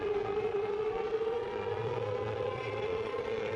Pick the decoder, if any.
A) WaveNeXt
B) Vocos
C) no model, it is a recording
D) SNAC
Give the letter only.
B